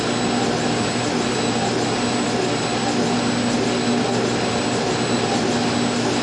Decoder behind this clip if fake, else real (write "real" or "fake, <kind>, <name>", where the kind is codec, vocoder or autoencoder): real